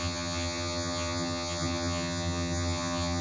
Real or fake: fake